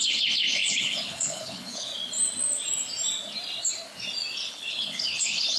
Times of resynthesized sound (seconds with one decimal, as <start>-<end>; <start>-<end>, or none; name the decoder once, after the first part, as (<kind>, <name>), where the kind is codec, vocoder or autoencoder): 0.0-1.9 (codec, HILCodec); 4.5-5.6